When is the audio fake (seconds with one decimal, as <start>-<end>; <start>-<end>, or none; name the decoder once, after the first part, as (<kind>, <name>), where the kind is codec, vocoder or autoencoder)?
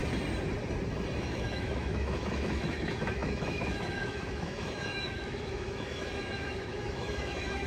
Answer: 1.2-7.7 (autoencoder, DAC-VAE)